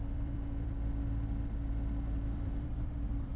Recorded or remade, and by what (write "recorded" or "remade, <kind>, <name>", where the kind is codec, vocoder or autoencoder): remade, vocoder, BigVGAN v2